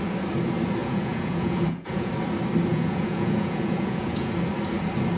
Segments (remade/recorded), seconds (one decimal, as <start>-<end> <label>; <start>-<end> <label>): 0.0-0.8 recorded; 0.8-2.1 remade; 2.1-2.7 recorded; 2.7-4.3 remade; 4.3-5.2 recorded